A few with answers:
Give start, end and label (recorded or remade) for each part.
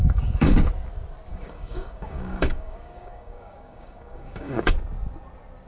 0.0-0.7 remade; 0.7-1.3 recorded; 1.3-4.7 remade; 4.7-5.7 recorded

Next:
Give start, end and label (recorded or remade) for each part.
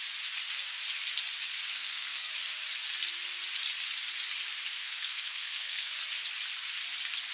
0.0-1.7 recorded; 1.7-2.3 remade; 2.3-4.8 recorded; 4.8-5.9 remade; 5.9-7.3 recorded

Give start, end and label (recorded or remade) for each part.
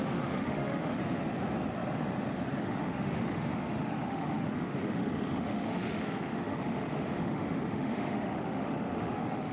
0.0-1.0 remade; 1.0-2.6 recorded; 2.6-9.5 remade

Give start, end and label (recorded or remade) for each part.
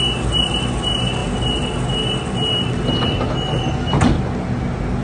0.0-5.0 recorded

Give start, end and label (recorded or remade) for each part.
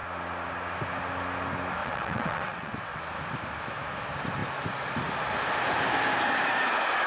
0.0-1.8 recorded; 1.8-3.0 remade; 3.0-7.1 recorded